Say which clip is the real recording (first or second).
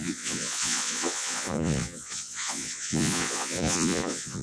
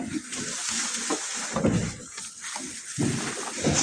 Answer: second